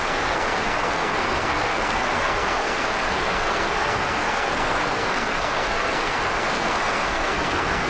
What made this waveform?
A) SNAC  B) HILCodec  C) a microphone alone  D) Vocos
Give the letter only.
A